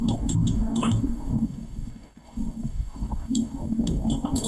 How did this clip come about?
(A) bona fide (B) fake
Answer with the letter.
B